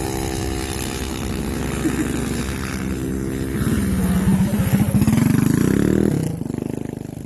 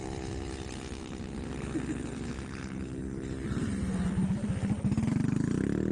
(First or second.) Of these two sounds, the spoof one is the second